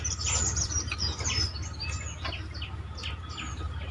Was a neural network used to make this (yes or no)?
no